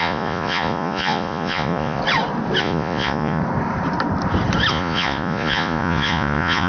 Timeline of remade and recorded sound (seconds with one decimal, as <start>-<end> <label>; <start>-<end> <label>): 0.0-2.0 remade; 2.0-2.6 recorded; 2.6-3.4 remade; 3.4-4.7 recorded; 4.7-6.7 remade